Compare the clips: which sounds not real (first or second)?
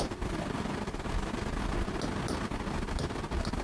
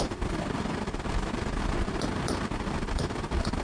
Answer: second